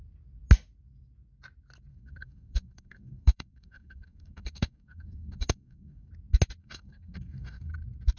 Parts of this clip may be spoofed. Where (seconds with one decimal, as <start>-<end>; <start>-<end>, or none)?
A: 1.9-6.1; 6.6-7.7